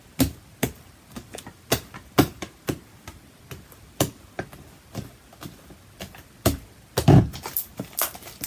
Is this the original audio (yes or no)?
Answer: yes